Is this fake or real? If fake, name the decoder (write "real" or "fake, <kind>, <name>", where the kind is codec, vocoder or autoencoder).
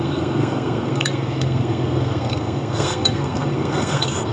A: fake, codec, SNAC